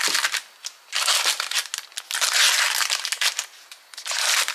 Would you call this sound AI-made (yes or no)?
no